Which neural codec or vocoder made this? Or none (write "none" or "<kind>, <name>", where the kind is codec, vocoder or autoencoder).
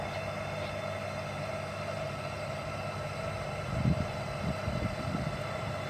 none